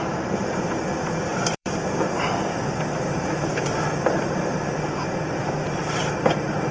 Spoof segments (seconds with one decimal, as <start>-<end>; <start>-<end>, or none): 0.0-6.7